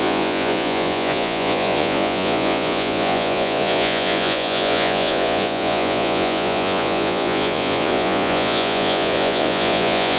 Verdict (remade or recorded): remade